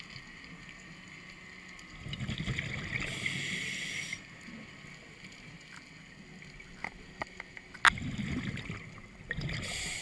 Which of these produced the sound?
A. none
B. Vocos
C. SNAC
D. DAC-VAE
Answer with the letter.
A